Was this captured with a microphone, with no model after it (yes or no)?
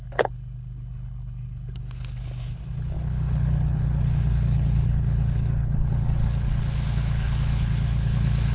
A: no